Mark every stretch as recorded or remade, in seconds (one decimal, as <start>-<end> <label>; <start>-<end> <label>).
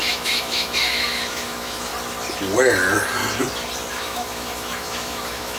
0.0-1.9 remade; 1.9-3.9 recorded; 3.9-5.6 remade